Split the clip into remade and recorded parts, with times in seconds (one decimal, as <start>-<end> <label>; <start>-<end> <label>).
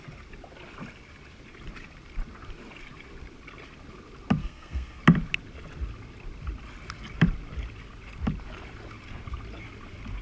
0.0-4.4 recorded; 4.4-5.0 remade; 5.0-10.2 recorded